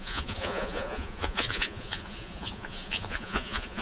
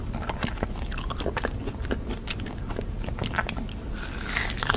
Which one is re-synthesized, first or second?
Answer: first